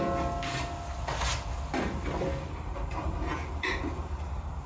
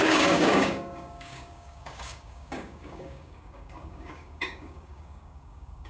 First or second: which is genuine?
first